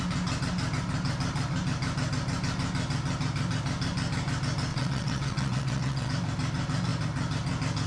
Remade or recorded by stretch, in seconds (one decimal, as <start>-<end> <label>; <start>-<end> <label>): 0.0-4.7 recorded; 4.7-6.1 remade; 6.1-7.9 recorded